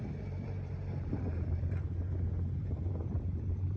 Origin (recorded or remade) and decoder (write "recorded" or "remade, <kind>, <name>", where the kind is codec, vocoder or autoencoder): remade, vocoder, BigVGAN v2